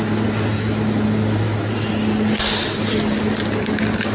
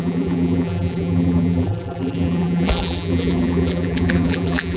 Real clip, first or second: first